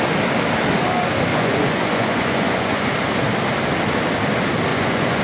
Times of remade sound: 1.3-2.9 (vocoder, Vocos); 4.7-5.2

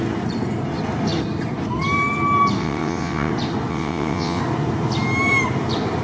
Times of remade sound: 2.6-3.3 (vocoder, WaveNeXt); 3.7-4.4